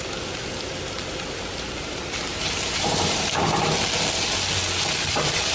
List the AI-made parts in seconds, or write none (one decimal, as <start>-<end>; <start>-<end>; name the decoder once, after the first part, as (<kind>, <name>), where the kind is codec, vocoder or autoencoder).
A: 2.3-3.7 (vocoder, BigVGAN v2)